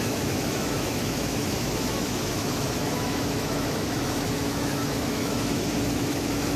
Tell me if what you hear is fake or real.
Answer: fake